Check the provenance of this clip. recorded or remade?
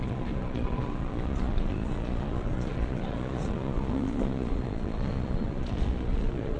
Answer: remade